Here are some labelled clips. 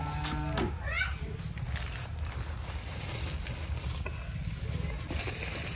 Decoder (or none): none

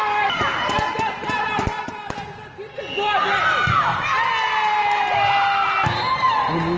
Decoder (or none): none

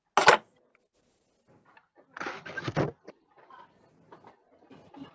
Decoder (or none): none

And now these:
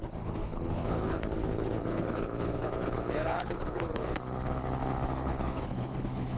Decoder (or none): codec, HILCodec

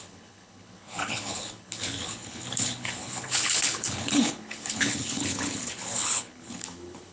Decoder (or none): codec, HILCodec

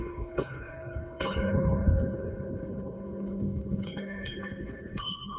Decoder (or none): codec, HILCodec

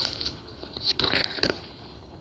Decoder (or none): codec, HILCodec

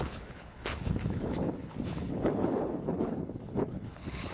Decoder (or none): codec, HILCodec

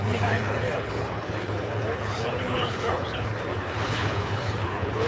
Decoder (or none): codec, HILCodec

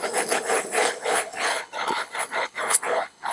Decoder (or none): codec, HILCodec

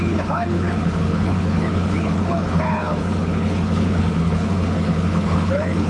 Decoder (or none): codec, HILCodec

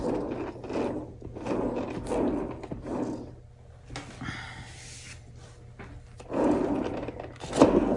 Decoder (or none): none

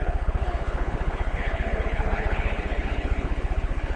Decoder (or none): codec, HILCodec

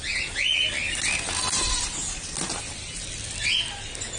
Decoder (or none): none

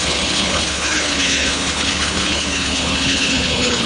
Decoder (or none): codec, HILCodec